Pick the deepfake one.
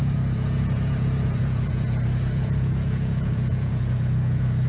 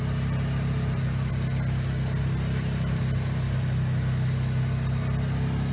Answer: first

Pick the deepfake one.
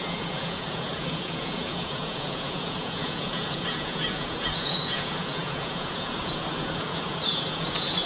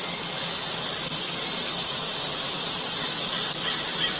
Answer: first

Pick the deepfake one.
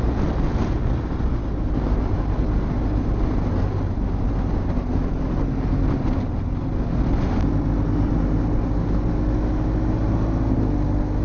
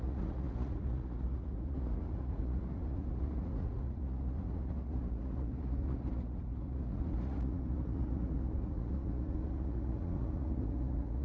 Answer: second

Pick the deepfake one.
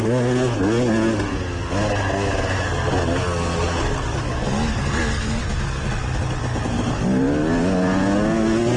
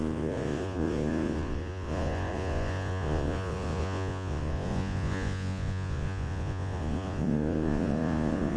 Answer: second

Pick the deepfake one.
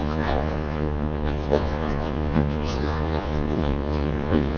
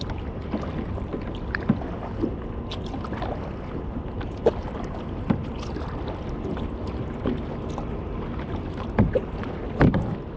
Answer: first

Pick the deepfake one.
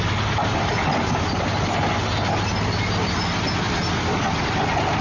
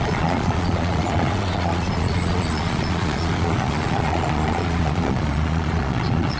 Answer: second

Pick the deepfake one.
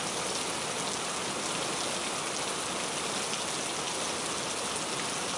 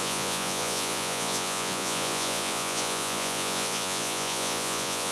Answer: second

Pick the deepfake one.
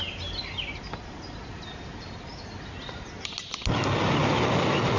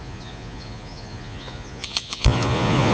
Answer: second